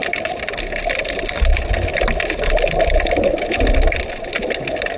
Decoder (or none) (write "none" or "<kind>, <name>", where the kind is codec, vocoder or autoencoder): none